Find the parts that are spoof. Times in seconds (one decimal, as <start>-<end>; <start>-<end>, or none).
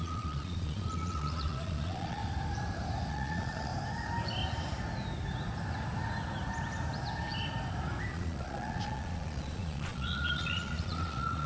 0.0-2.2; 3.1-3.7; 8.1-11.5